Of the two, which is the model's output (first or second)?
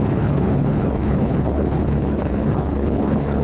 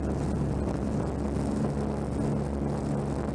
first